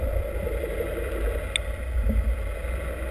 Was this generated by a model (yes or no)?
no